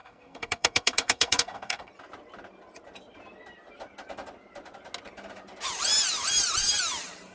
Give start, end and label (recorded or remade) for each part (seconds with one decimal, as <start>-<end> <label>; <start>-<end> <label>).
0.0-1.9 remade; 1.9-7.3 recorded